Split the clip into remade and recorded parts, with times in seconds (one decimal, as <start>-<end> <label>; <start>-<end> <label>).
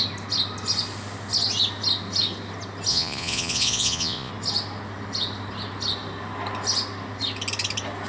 0.0-2.9 recorded; 2.9-4.3 remade; 4.3-8.1 recorded